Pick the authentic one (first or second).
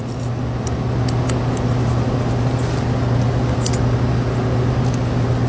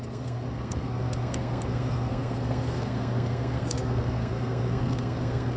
first